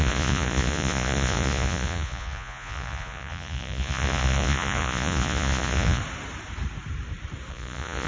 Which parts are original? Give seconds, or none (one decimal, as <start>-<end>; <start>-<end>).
6.0-7.5